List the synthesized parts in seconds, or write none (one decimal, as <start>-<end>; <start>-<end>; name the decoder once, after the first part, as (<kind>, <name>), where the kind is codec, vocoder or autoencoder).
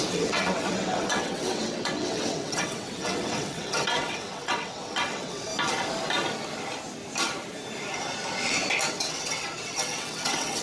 0.0-5.5 (vocoder, WaveNeXt); 8.9-10.6